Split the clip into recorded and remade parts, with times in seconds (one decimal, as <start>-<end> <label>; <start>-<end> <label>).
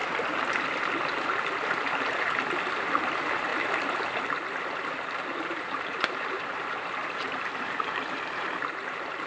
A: 0.0-3.1 recorded; 3.1-3.5 remade; 3.5-4.6 recorded; 4.6-9.3 remade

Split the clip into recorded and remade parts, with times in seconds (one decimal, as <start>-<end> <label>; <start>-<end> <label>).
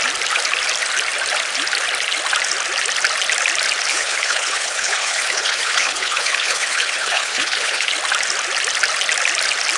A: 0.0-3.9 recorded; 3.9-7.9 remade; 7.9-9.8 recorded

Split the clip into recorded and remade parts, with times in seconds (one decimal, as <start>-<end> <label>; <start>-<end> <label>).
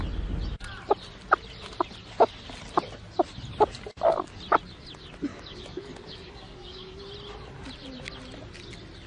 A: 0.0-5.3 recorded; 5.3-7.0 remade; 7.0-9.1 recorded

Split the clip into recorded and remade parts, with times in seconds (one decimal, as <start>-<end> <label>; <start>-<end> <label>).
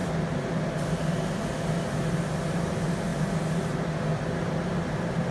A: 0.0-5.3 recorded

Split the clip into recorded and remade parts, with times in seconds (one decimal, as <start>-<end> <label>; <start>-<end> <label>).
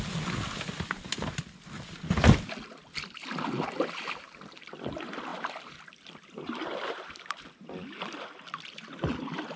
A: 0.0-9.6 recorded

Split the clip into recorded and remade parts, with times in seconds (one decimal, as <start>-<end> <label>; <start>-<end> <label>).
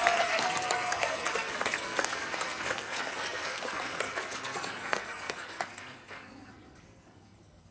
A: 0.0-7.7 remade